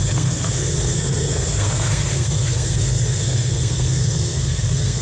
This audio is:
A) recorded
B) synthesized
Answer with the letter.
B